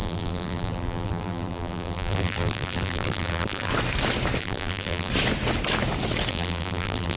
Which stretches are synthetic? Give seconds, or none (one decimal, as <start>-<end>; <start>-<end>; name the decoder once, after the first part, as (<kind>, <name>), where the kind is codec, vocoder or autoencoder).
0.0-3.7 (vocoder, BigVGAN v2); 4.4-5.1; 6.3-7.2